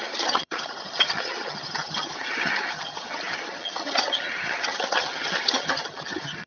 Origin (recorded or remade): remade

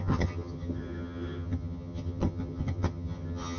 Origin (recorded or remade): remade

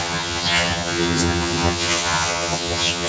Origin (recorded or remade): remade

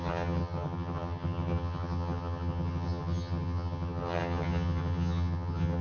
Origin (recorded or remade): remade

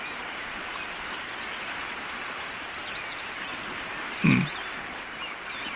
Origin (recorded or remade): recorded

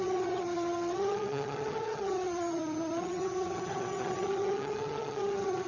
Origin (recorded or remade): remade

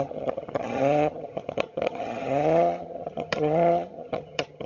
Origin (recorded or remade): remade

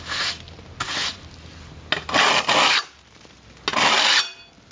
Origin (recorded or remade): recorded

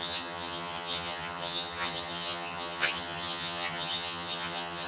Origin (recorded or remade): remade